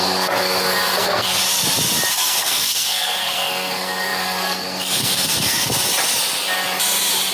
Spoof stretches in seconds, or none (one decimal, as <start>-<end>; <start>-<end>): 0.0-1.4; 2.1-5.7